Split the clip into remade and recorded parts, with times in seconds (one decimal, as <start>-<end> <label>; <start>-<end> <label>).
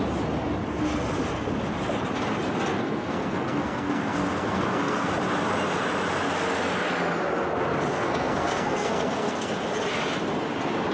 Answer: 0.0-2.7 recorded; 2.7-5.1 remade; 5.1-7.9 recorded; 7.9-9.5 remade; 9.5-10.9 recorded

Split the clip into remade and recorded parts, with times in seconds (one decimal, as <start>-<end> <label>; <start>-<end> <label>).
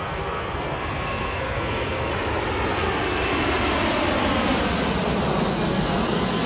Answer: 0.0-2.1 remade; 2.1-2.7 recorded; 2.7-3.2 remade; 3.2-5.5 recorded; 5.5-6.5 remade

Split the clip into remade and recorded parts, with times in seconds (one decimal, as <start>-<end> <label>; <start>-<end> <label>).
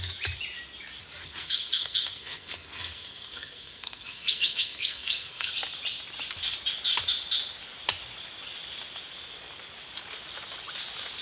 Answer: 0.0-1.2 recorded; 1.2-5.5 remade; 5.5-11.2 recorded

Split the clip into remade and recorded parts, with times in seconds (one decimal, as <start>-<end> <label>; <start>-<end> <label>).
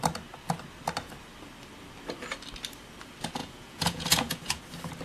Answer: 0.0-3.4 recorded; 3.4-4.6 remade; 4.6-5.0 recorded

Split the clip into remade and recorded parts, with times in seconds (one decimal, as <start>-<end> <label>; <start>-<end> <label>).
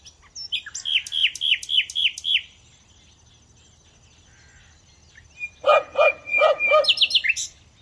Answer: 0.0-5.7 recorded; 5.7-6.6 remade; 6.6-7.8 recorded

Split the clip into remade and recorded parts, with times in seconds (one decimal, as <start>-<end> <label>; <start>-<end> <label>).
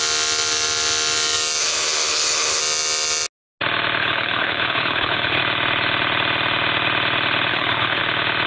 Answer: 0.0-1.6 recorded; 1.6-2.6 remade; 2.6-4.0 recorded; 4.0-5.4 remade; 5.4-7.5 recorded; 7.5-8.0 remade; 8.0-8.5 recorded